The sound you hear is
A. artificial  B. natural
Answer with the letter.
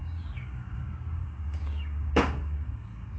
A